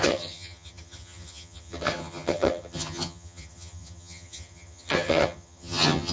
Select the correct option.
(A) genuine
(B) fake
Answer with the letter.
B